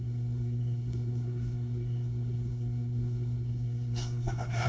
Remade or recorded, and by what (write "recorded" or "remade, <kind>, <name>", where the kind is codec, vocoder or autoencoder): remade, codec, SNAC